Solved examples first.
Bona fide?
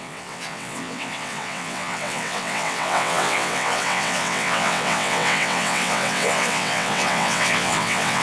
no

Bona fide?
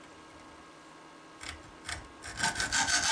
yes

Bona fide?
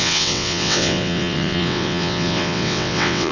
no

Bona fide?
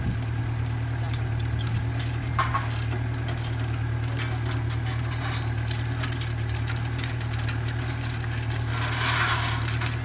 yes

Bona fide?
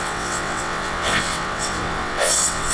no